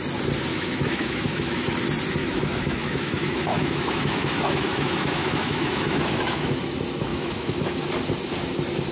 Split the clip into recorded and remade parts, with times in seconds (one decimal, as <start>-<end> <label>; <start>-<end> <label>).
0.0-0.5 recorded; 0.5-1.7 remade; 1.7-2.2 recorded; 2.2-6.6 remade; 6.6-7.1 recorded; 7.1-7.8 remade; 7.8-8.9 recorded